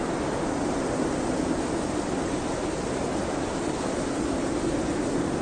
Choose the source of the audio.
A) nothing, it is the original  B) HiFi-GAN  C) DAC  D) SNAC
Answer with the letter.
A